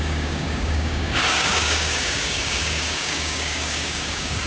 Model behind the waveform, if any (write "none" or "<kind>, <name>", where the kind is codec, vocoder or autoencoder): codec, DAC